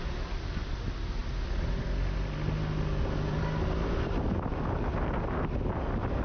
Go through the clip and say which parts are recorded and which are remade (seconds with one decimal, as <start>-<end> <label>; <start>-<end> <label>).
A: 0.0-6.2 recorded